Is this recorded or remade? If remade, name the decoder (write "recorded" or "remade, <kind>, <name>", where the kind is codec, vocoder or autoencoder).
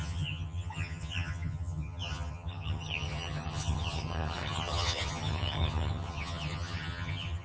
remade, vocoder, HiFi-GAN